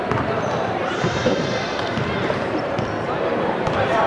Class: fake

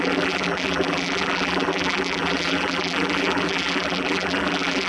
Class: fake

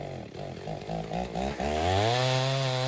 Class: real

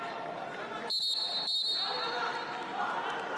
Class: real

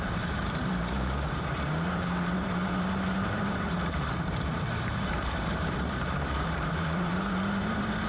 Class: fake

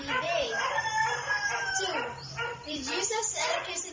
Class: fake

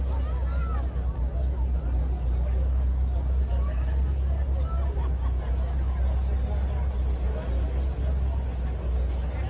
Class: real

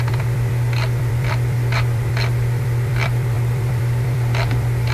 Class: fake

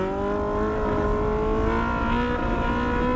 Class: real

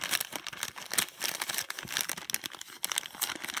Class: real